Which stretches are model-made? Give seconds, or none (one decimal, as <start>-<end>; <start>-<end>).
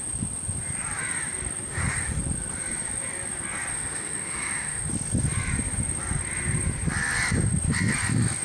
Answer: 1.7-2.2; 3.7-4.9